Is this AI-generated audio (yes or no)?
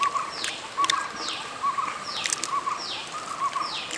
no